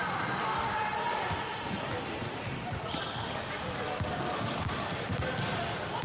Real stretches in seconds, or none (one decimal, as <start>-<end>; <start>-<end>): 0.0-6.0